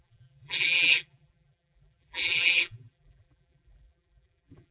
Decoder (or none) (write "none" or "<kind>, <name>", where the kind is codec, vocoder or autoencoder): vocoder, BigVGAN v2